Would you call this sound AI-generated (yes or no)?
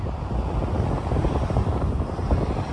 no